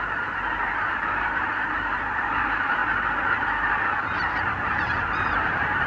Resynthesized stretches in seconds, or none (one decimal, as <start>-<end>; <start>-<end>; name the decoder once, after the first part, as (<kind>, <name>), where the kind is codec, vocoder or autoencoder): 0.0-2.8 (vocoder, BigVGAN v2); 4.4-5.9